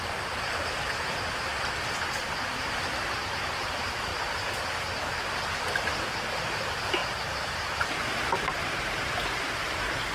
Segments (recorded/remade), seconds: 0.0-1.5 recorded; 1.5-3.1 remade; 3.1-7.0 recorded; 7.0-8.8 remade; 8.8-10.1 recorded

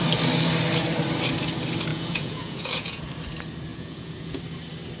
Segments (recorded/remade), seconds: 0.0-1.9 recorded; 1.9-3.0 remade; 3.0-3.7 recorded; 3.7-4.4 remade; 4.4-5.0 recorded

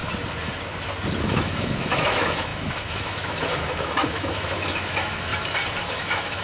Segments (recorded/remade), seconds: 0.0-1.2 recorded; 1.2-5.3 remade; 5.3-5.8 recorded; 5.8-6.4 remade

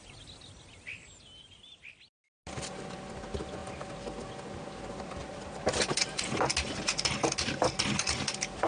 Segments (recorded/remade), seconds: 0.0-5.2 recorded; 5.2-6.2 remade; 6.2-8.7 recorded

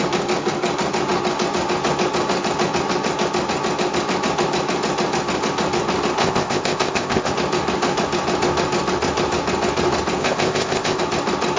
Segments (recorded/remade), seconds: 0.0-6.2 recorded; 6.2-7.3 remade; 7.3-10.2 recorded; 10.2-11.0 remade; 11.0-11.6 recorded

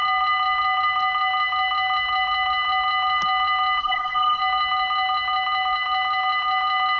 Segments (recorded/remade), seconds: 0.0-3.8 recorded; 3.8-4.4 remade; 4.4-7.0 recorded